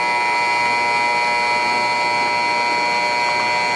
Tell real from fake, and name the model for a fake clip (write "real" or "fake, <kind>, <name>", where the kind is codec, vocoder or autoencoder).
real